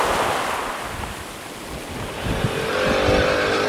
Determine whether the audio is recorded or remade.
recorded